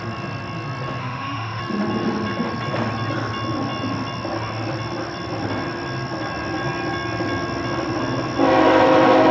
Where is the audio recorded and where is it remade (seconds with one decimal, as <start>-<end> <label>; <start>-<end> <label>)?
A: 0.0-1.0 recorded; 1.0-1.6 remade; 1.6-9.3 recorded